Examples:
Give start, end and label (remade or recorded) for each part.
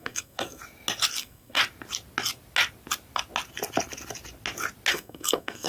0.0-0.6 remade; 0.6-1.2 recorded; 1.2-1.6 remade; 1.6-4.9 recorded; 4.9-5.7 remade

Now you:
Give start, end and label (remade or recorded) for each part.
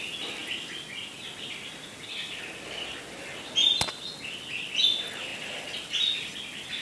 0.0-6.8 recorded